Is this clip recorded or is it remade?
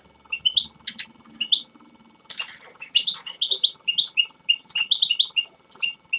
recorded